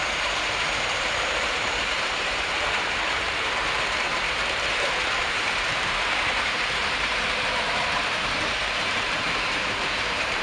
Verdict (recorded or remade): remade